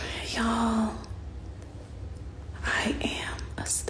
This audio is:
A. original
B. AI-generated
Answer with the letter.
A